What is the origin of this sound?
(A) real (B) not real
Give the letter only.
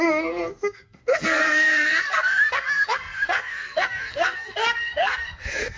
B